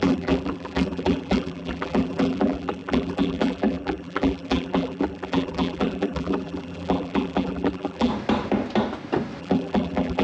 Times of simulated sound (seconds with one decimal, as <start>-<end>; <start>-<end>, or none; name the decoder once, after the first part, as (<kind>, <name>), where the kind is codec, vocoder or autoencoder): 0.0-8.1 (vocoder, BigVGAN v2); 9.4-10.2